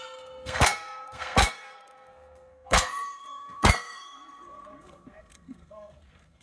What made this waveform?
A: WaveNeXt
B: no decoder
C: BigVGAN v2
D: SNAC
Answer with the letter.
D